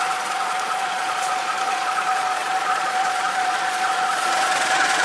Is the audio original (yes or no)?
no